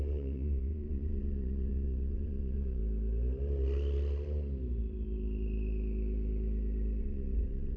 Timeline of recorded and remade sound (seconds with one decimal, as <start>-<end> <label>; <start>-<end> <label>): 0.0-2.8 remade; 2.8-7.0 recorded; 7.0-7.8 remade

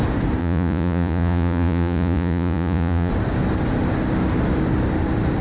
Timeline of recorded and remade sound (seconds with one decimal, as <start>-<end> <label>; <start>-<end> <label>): 0.0-0.4 recorded; 0.4-3.1 remade; 3.1-5.4 recorded

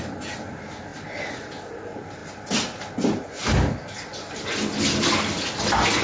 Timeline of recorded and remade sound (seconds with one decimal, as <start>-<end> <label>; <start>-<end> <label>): 0.0-6.0 recorded